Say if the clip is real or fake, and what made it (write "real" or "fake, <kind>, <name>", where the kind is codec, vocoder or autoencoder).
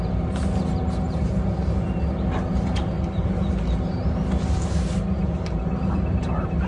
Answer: real